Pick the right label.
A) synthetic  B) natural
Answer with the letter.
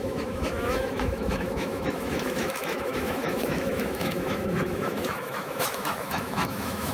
A